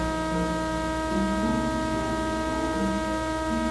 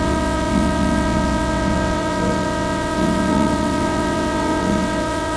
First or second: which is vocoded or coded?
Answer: second